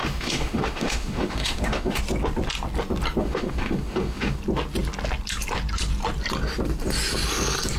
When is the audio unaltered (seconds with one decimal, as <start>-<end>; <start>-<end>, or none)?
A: 2.0-3.2; 4.4-7.8